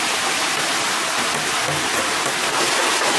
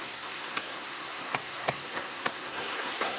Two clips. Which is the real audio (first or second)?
first